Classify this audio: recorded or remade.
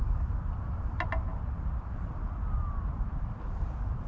recorded